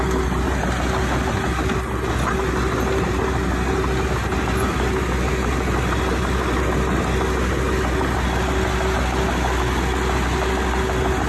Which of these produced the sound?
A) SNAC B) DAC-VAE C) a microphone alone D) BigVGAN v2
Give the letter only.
C